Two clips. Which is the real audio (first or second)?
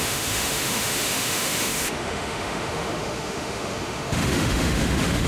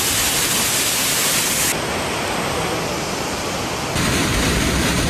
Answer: second